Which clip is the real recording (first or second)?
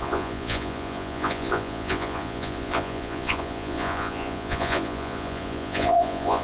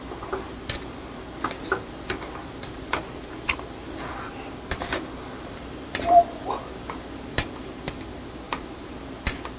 second